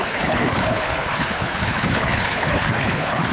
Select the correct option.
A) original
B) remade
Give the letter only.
B